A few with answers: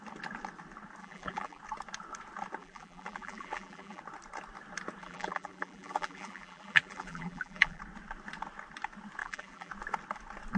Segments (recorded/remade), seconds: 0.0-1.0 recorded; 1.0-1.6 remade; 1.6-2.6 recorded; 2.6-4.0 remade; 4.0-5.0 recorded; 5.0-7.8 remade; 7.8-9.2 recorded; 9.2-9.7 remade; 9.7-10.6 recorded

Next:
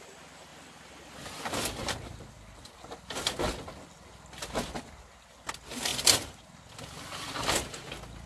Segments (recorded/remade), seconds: 0.0-5.9 recorded; 5.9-6.6 remade; 6.6-8.3 recorded

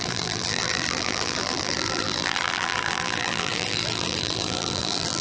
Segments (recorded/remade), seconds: 0.0-5.2 remade

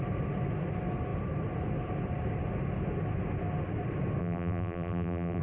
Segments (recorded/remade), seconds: 0.0-4.2 recorded; 4.2-5.4 remade

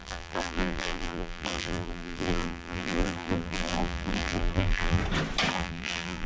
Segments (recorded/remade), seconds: 0.0-5.0 remade; 5.0-5.5 recorded; 5.5-6.3 remade